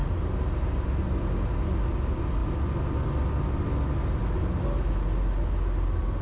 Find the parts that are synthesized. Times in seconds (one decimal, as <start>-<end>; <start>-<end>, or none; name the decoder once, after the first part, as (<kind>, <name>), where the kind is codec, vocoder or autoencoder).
none